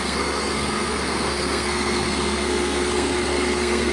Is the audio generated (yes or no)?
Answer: yes